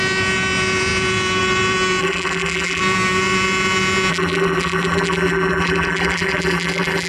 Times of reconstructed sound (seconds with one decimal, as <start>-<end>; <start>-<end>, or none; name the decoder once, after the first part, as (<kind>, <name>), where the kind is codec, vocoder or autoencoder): 2.0-2.8 (vocoder, BigVGAN v2); 4.1-7.1

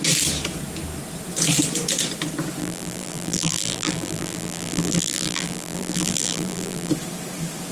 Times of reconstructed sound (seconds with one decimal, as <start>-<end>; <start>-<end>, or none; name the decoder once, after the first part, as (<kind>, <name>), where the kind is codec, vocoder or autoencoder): 2.6-6.9 (vocoder, BigVGAN v2)